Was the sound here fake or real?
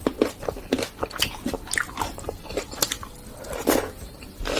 real